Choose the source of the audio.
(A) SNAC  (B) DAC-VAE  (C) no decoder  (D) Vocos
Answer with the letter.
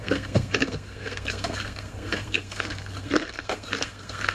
A